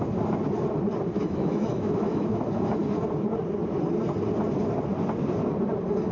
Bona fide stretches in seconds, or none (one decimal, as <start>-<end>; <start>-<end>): 0.0-1.2; 2.4-6.1